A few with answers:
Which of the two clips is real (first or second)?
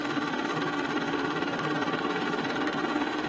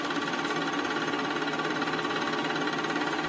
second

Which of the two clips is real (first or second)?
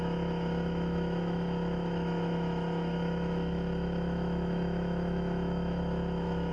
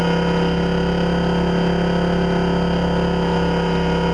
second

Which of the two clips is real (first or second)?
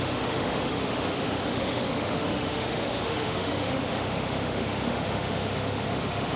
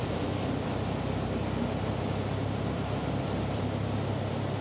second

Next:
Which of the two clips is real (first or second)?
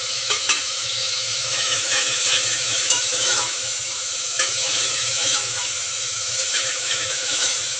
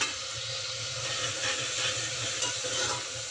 second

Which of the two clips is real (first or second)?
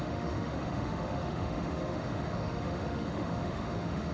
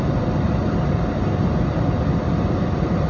second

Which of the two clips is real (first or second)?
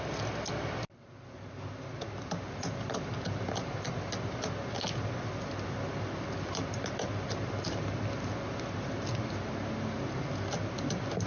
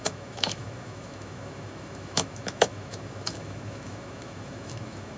first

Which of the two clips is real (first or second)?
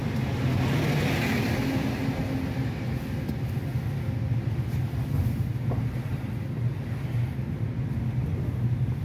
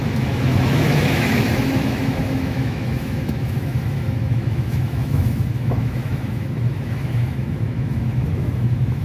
first